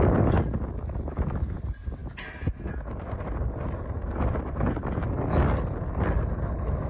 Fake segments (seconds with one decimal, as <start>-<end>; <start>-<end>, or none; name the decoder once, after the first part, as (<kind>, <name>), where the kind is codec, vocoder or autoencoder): none